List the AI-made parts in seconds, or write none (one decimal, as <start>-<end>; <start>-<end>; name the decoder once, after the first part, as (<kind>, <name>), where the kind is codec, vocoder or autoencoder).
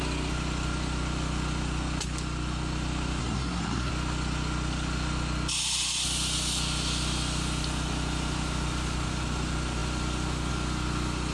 3.2-3.9 (codec, SNAC)